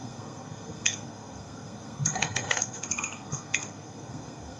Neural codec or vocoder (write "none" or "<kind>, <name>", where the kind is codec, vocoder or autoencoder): codec, SNAC